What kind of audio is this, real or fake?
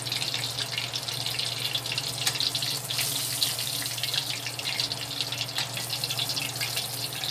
real